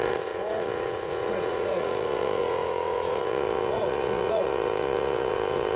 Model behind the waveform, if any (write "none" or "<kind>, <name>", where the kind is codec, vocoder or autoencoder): vocoder, Vocos